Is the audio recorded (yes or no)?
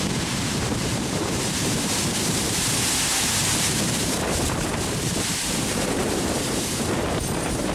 no